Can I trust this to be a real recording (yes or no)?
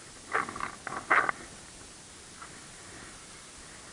yes